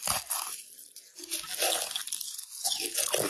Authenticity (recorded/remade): recorded